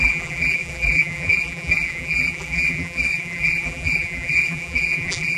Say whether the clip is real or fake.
fake